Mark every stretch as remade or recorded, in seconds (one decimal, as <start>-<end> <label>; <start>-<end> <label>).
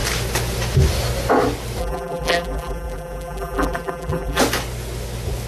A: 0.0-1.8 recorded; 1.8-4.4 remade; 4.4-5.5 recorded